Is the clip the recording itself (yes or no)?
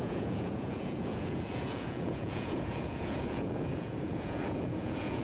no